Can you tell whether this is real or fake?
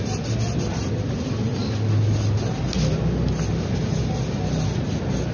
real